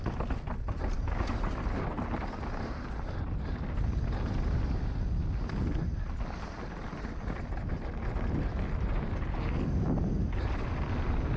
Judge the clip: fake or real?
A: real